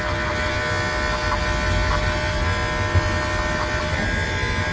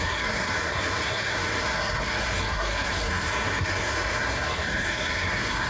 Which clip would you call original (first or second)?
first